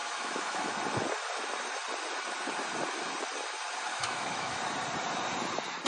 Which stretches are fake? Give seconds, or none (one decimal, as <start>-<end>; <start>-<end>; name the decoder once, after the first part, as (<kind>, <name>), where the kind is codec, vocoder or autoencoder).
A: 0.0-0.7 (autoencoder, DAC-VAE); 3.9-4.6